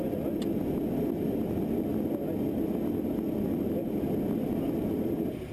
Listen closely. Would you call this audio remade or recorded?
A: recorded